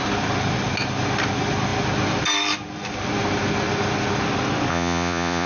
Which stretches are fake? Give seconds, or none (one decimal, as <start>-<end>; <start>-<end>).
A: 4.7-5.5